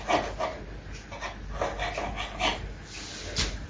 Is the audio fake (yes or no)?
no